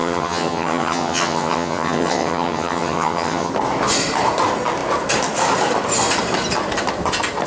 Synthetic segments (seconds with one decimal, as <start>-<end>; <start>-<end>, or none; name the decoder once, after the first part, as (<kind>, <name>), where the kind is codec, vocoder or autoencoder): 0.0-3.5 (vocoder, HiFi-GAN)